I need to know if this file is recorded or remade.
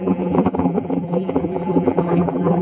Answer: remade